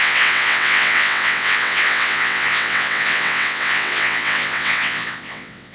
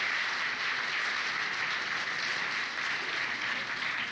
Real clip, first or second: second